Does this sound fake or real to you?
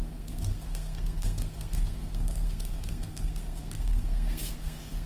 fake